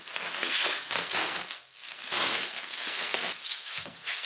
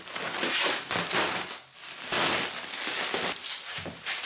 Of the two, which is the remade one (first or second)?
first